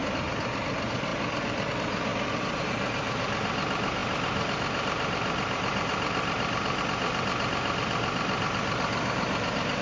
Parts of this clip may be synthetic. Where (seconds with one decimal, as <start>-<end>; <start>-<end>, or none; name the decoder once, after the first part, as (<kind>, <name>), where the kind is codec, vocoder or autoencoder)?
none